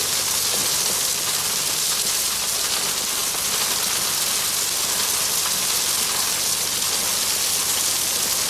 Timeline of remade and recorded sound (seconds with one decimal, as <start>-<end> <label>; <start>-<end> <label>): 0.0-8.5 recorded